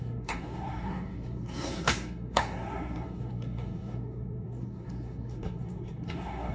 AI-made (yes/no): yes